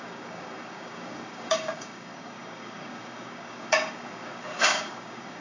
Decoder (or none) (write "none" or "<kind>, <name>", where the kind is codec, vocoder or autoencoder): codec, DAC